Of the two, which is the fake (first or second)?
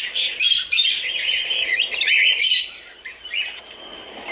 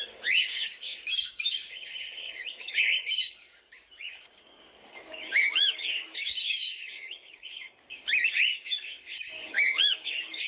second